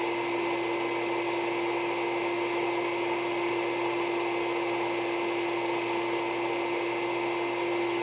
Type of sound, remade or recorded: recorded